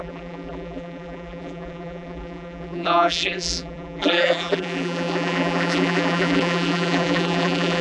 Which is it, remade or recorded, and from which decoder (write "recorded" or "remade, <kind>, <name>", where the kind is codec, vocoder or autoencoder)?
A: remade, vocoder, BigVGAN v2